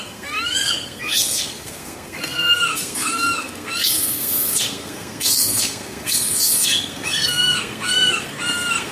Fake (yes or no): yes